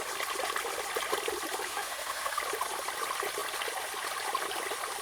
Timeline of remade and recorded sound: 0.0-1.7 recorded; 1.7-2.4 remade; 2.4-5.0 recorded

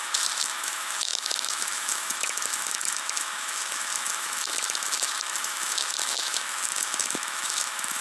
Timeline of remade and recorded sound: 0.0-8.0 remade